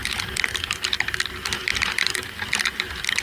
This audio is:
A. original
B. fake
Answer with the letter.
A